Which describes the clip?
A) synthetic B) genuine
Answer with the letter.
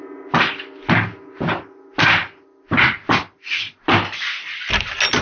B